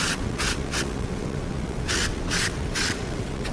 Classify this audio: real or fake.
fake